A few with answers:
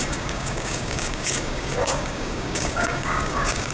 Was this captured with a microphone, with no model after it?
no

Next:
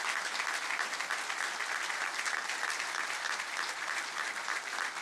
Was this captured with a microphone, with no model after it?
yes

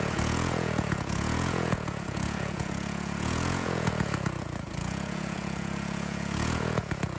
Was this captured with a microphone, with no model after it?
no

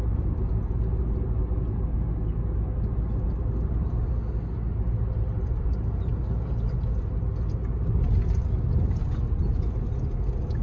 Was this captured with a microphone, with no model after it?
yes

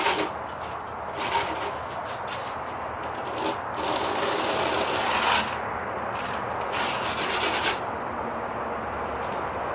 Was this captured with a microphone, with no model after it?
yes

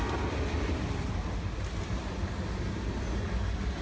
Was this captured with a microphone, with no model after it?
yes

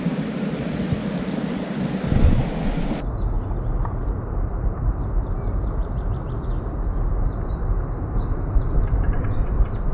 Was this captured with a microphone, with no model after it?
yes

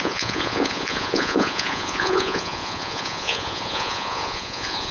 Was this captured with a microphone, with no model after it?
no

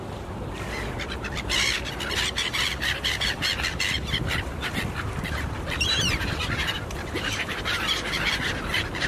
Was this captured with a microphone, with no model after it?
no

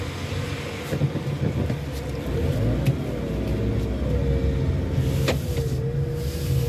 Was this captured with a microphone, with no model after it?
yes